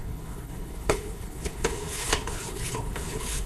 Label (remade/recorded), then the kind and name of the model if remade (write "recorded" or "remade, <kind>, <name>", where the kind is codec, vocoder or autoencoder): remade, codec, HILCodec